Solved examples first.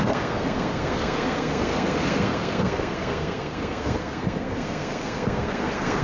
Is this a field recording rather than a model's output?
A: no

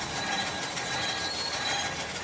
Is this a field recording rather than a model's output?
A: yes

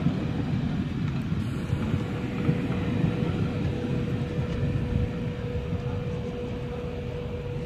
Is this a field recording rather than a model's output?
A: yes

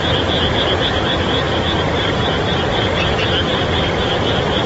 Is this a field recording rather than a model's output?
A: yes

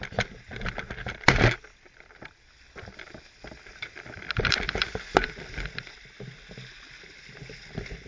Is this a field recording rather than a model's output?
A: yes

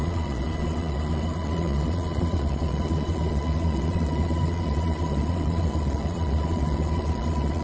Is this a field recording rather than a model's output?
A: no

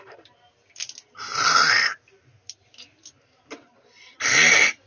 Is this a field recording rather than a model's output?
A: yes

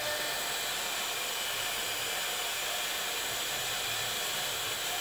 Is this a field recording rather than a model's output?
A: yes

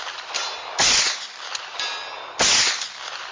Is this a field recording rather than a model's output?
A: yes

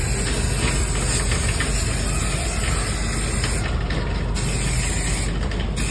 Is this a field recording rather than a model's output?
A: yes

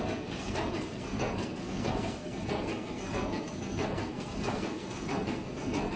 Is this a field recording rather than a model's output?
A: no